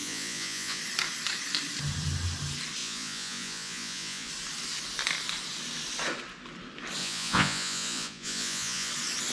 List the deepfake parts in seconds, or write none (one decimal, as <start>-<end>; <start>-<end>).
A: 0.0-0.8; 2.8-4.3; 7.0-8.9